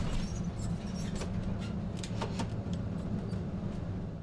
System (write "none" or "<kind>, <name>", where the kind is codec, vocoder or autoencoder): none